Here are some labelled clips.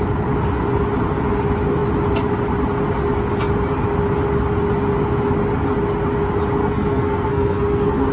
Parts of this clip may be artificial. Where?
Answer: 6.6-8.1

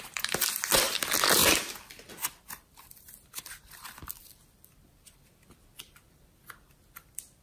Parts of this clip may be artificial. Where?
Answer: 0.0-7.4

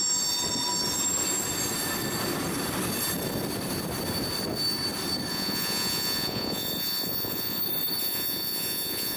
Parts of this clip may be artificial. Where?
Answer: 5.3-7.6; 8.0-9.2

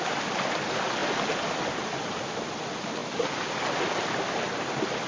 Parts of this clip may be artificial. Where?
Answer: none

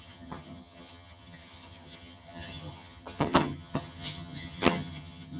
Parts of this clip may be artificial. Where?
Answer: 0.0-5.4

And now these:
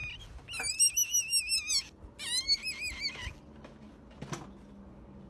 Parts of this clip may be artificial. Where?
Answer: none

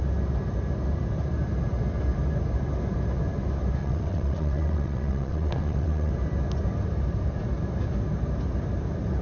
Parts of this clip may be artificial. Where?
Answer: 3.8-6.1